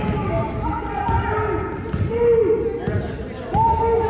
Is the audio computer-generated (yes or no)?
no